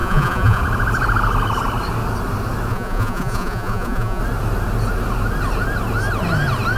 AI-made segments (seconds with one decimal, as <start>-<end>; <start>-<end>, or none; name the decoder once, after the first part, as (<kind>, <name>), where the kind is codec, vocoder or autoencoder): 0.0-0.6 (vocoder, Vocos); 2.7-4.2